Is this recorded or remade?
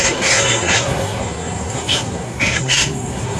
remade